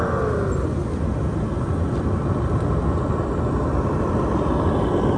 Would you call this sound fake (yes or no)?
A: no